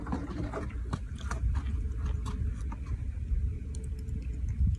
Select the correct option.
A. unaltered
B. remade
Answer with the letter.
A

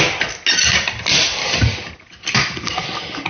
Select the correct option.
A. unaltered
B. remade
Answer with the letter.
A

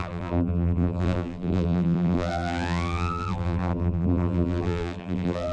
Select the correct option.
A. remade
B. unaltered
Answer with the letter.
A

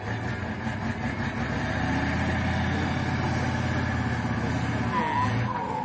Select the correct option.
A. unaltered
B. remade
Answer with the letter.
A